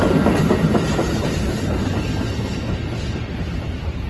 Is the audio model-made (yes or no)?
no